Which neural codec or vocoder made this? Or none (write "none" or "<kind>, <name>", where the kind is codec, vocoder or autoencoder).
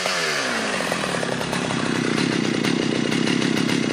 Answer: vocoder, BigVGAN v2